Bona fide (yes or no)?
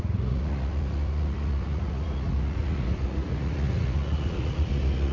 no